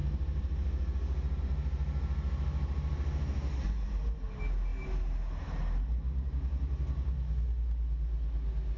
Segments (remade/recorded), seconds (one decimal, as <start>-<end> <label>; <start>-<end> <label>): 0.0-8.8 recorded